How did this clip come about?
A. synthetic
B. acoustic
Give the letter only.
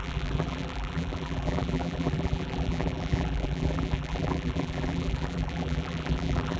A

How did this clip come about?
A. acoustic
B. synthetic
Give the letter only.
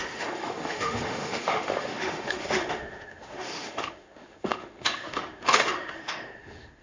B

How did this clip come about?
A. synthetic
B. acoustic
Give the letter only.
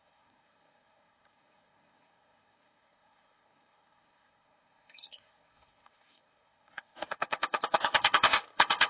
A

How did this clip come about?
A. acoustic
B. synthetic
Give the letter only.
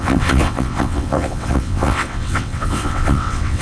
B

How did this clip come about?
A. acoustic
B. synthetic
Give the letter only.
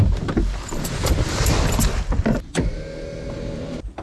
A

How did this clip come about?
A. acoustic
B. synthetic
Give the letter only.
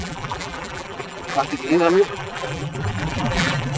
B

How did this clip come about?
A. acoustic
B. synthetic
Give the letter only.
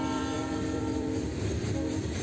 B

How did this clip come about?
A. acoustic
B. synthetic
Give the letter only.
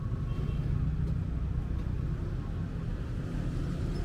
A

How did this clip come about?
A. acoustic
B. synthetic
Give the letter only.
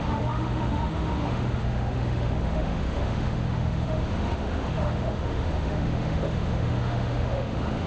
B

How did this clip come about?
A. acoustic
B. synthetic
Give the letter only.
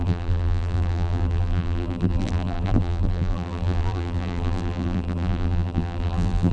B